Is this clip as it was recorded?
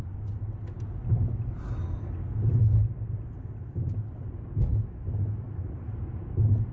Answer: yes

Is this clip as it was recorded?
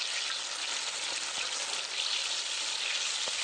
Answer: yes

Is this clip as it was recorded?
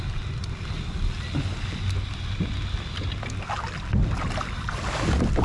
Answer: yes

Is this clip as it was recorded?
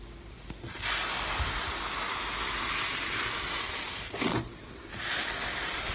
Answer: yes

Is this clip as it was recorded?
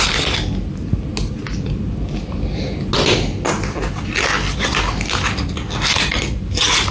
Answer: yes